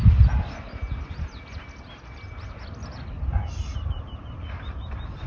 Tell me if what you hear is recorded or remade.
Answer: recorded